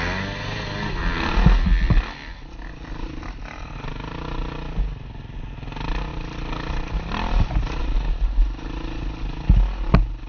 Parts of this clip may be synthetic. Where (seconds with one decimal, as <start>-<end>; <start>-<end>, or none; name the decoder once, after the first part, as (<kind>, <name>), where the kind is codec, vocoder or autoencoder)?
1.0-3.8 (vocoder, BigVGAN v2); 6.1-7.8